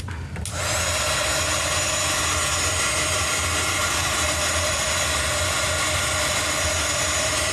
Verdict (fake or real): real